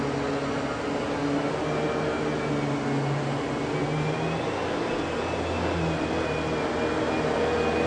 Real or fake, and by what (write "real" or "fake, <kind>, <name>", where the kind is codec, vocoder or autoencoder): real